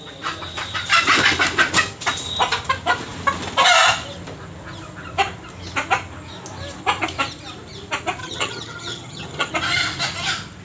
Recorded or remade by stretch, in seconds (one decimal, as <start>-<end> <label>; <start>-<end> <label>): 0.0-8.2 recorded; 8.2-9.5 remade; 9.5-10.6 recorded